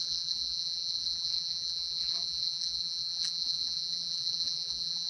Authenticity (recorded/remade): remade